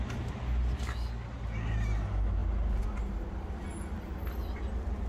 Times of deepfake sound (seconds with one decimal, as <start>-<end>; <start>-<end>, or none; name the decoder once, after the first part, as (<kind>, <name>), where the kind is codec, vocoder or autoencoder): none